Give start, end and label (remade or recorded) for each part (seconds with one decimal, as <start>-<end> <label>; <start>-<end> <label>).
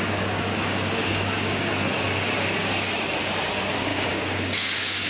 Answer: 0.0-1.7 remade; 1.7-3.2 recorded; 3.2-5.1 remade